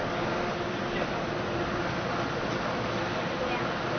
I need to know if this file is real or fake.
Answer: real